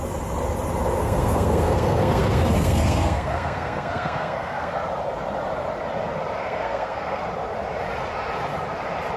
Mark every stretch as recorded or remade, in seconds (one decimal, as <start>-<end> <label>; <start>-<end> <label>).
0.0-1.0 recorded; 1.0-4.8 remade; 4.8-6.4 recorded; 6.4-7.2 remade; 7.2-9.2 recorded